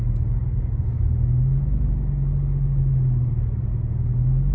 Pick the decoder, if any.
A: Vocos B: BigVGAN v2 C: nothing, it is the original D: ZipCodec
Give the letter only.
C